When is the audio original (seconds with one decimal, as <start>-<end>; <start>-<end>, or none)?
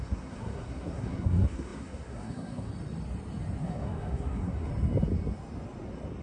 2.7-3.6; 4.7-6.2